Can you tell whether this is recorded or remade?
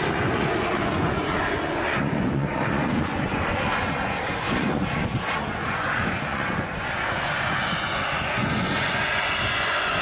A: remade